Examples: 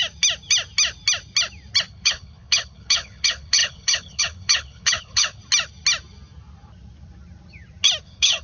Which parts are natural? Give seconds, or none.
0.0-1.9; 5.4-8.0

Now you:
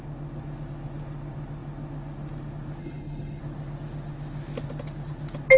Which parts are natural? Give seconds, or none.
0.0-2.8; 3.4-5.6